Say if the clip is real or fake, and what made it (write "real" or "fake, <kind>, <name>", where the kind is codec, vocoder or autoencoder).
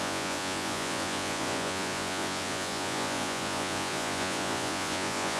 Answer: fake, vocoder, Vocos